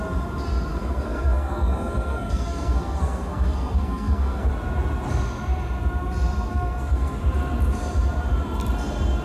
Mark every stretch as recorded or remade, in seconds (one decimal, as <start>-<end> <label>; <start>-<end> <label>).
0.0-0.7 recorded; 0.7-4.5 remade; 4.5-6.5 recorded; 6.5-7.1 remade; 7.1-9.2 recorded